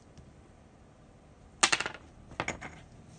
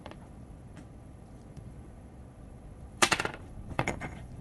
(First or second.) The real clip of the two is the first